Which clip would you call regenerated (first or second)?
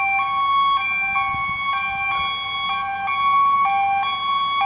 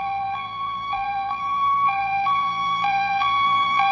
second